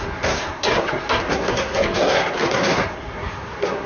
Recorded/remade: remade